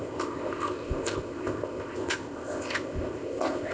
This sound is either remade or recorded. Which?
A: remade